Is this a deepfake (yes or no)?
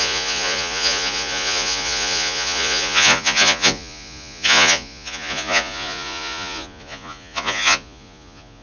yes